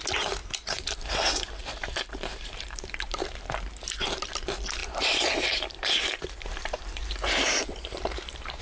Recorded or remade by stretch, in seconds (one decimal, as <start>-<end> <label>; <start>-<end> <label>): 0.0-0.4 recorded; 0.4-1.0 remade; 1.0-1.6 recorded; 1.6-3.7 remade; 3.7-4.8 recorded; 4.8-8.6 remade